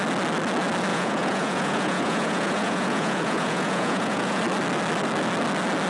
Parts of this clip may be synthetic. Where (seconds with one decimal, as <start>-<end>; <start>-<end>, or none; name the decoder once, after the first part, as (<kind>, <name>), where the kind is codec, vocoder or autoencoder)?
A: 0.9-4.4 (vocoder, Vocos)